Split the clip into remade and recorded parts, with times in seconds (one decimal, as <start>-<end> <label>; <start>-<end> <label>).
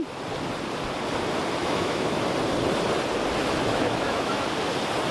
0.0-1.6 recorded; 1.6-2.2 remade; 2.2-3.7 recorded; 3.7-4.4 remade; 4.4-5.1 recorded